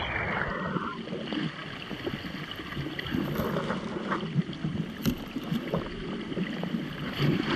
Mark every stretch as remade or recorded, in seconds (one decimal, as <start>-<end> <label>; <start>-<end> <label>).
0.0-7.6 recorded